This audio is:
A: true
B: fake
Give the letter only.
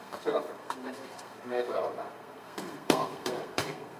B